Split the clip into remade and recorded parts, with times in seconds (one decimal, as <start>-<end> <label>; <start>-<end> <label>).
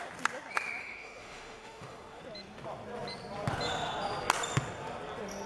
0.0-0.8 recorded; 0.8-2.2 remade; 2.2-5.5 recorded